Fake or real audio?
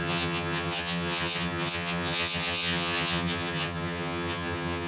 fake